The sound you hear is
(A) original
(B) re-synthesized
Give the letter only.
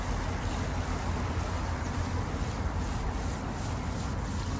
A